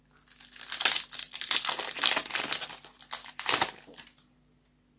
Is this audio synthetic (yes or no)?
no